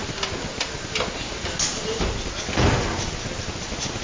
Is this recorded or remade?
recorded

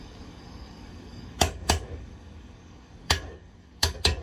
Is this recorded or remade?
remade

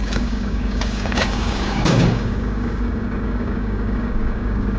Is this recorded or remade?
remade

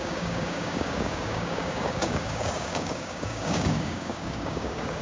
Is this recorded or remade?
remade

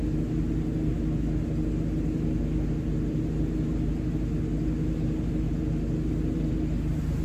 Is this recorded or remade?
recorded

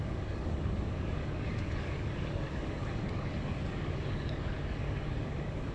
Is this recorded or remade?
remade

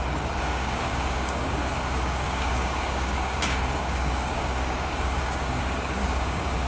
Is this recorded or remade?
remade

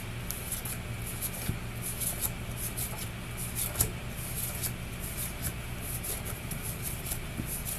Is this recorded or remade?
recorded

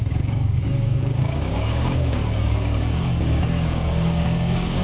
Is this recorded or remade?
remade